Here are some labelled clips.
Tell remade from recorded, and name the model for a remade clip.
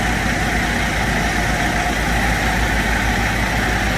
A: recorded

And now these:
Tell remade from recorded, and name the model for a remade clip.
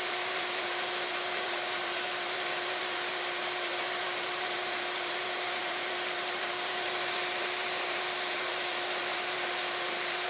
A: remade, vocoder, BigVGAN v2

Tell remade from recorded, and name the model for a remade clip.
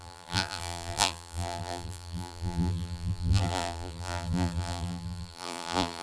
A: remade, vocoder, BigVGAN v2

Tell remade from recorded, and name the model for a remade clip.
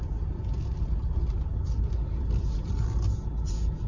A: recorded